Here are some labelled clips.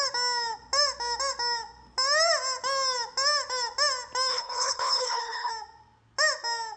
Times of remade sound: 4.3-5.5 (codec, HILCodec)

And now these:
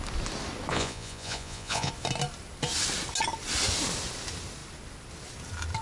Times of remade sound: 0.7-1.9 (vocoder, Vocos)

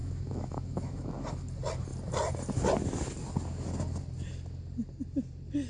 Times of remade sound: 0.0-1.3 (autoencoder, DAC-VAE)

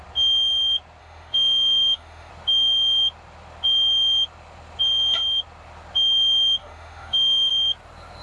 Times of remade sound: 1.0-2.3 (autoencoder, DAC-VAE); 6.6-7.5

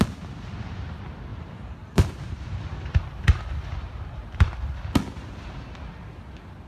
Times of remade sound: 1.3-4.4 (vocoder, BigVGAN v2)